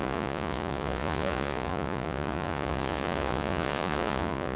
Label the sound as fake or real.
fake